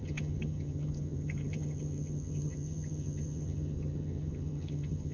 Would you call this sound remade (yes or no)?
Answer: yes